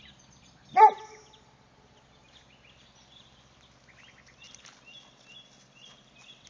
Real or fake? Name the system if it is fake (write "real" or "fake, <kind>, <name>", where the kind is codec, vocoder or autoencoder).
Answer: real